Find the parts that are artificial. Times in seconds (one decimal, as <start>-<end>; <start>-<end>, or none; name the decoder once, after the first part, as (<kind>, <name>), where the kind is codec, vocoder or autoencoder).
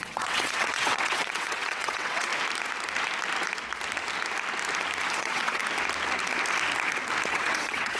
0.0-2.3 (vocoder, WaveNeXt); 5.1-5.6; 7.3-8.0